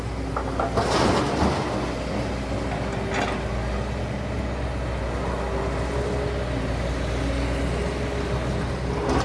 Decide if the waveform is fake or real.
real